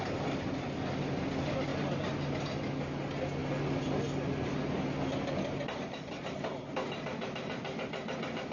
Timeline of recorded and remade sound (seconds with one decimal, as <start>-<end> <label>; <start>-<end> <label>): 0.0-8.5 recorded

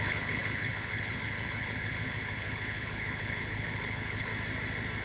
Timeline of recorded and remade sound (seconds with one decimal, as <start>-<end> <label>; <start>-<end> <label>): 0.0-4.3 remade; 4.3-5.0 recorded

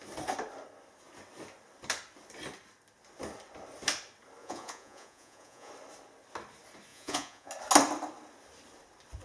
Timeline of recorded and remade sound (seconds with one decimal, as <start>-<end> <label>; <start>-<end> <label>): 0.0-4.4 recorded; 4.4-5.7 remade; 5.7-6.9 recorded; 6.9-7.5 remade; 7.5-9.2 recorded

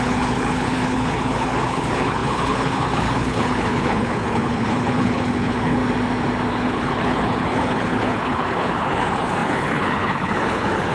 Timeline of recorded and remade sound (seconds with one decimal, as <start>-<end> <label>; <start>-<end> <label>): 0.0-5.8 remade; 5.8-6.5 recorded; 6.5-10.9 remade

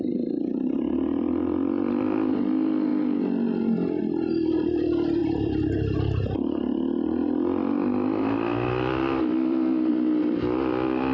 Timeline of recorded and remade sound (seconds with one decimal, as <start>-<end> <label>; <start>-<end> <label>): 0.0-2.9 remade; 2.9-4.0 recorded; 4.0-11.1 remade

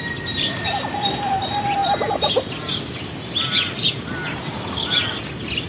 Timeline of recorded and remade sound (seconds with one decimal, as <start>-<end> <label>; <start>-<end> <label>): 0.0-5.7 recorded